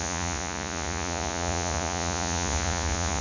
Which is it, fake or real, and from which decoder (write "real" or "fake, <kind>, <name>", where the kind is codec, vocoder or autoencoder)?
fake, vocoder, Vocos